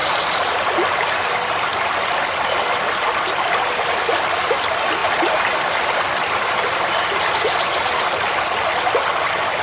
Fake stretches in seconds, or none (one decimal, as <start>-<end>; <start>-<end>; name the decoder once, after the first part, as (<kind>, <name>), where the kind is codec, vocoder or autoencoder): 5.0-5.5 (vocoder, BigVGAN v2)